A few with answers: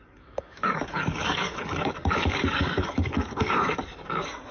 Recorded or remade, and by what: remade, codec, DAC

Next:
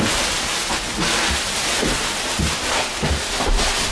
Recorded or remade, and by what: recorded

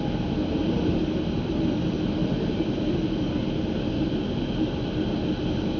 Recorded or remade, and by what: recorded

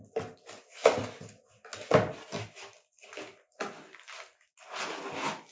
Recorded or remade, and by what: recorded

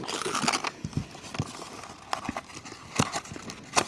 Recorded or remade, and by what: recorded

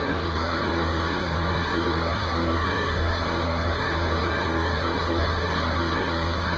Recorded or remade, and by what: remade, codec, SNAC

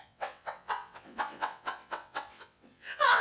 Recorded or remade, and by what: remade, vocoder, WaveNeXt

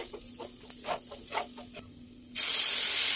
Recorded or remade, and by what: recorded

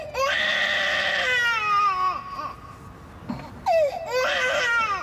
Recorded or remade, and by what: recorded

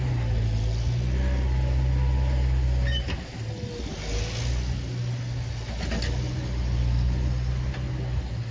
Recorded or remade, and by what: recorded